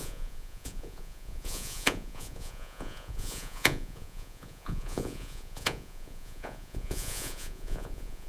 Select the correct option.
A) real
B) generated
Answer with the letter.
B